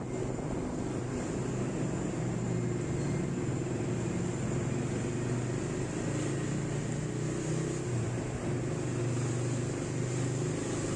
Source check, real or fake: real